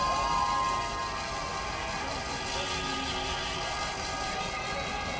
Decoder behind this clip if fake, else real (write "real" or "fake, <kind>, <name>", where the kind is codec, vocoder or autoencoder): real